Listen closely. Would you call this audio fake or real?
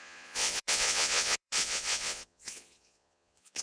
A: fake